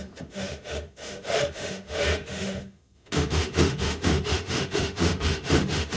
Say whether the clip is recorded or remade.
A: remade